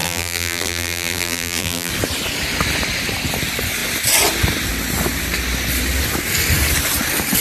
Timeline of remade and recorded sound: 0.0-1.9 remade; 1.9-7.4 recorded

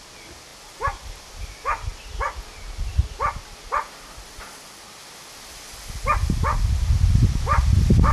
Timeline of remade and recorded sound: 0.0-8.1 recorded

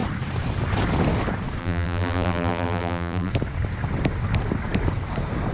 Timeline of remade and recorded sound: 0.0-1.6 recorded; 1.6-3.3 remade; 3.3-5.5 recorded

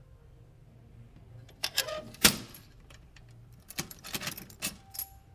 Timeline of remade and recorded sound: 0.0-1.6 recorded; 1.6-4.8 remade; 4.8-5.3 recorded

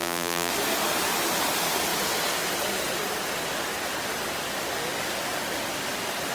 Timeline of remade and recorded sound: 0.0-0.5 remade; 0.5-6.3 recorded

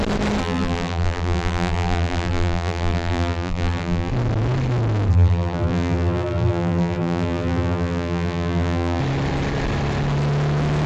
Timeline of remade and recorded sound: 0.0-0.4 recorded; 0.4-4.1 remade; 4.1-5.1 recorded; 5.1-9.0 remade; 9.0-10.9 recorded

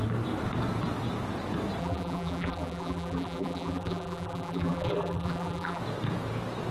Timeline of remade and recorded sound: 0.0-1.8 recorded; 1.8-5.8 remade; 5.8-6.7 recorded

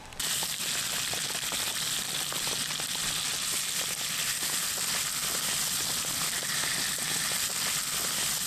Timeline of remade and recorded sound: 0.0-5.2 recorded; 5.2-7.8 remade; 7.8-8.5 recorded